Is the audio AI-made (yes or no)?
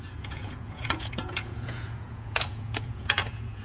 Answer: yes